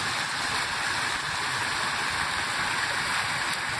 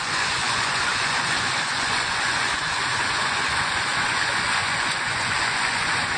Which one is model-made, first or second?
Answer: second